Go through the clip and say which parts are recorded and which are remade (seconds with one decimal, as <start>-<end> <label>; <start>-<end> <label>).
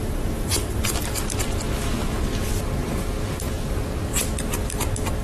0.0-1.2 remade; 1.2-5.2 recorded